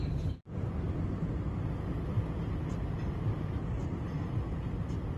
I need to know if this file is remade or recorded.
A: recorded